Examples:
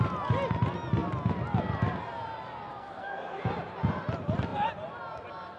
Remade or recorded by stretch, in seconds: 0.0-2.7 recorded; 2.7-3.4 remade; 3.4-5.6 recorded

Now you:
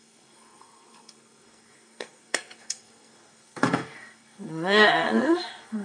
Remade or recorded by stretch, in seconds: 0.0-5.8 remade

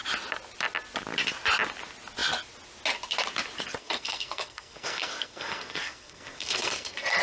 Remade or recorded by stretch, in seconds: 0.0-3.8 recorded; 3.8-7.2 remade

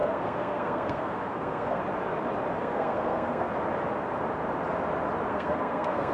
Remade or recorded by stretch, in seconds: 0.0-1.8 remade; 1.8-2.6 recorded; 2.6-3.5 remade; 3.5-5.3 recorded; 5.3-6.1 remade

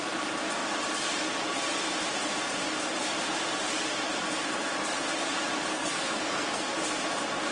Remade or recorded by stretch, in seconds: 0.0-5.7 recorded; 5.7-6.7 remade; 6.7-7.5 recorded

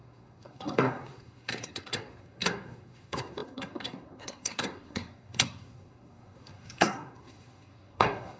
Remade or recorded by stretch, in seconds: 0.0-8.4 remade